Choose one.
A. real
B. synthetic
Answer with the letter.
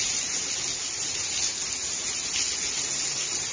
A